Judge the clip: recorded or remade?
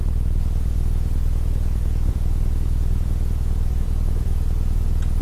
remade